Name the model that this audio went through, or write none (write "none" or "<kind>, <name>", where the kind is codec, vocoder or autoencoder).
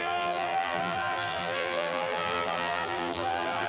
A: vocoder, BigVGAN v2